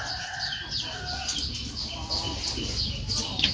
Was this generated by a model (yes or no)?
no